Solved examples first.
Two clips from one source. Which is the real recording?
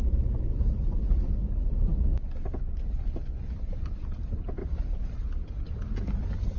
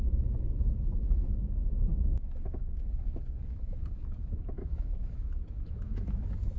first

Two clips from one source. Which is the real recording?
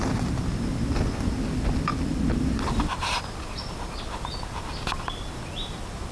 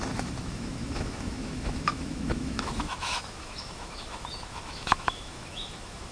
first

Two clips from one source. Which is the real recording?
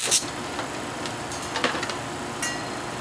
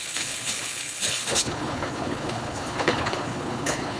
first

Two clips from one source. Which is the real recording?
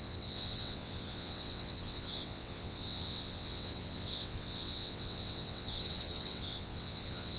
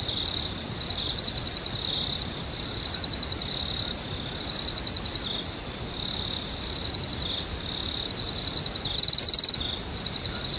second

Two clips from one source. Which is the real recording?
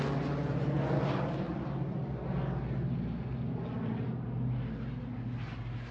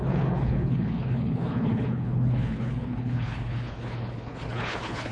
first